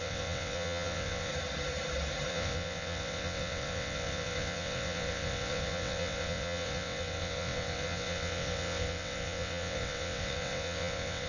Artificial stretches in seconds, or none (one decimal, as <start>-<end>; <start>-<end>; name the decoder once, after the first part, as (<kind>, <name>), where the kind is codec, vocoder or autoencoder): 0.0-1.3 (vocoder, WaveNeXt); 2.3-11.3